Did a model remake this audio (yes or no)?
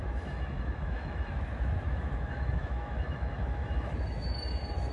yes